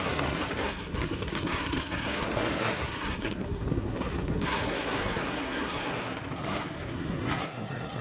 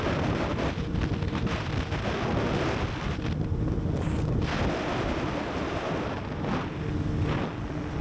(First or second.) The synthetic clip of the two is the first